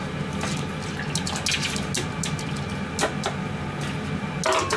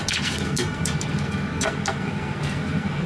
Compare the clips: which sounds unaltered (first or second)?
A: first